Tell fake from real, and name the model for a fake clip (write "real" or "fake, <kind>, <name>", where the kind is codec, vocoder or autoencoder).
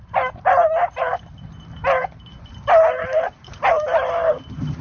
fake, vocoder, BigVGAN v2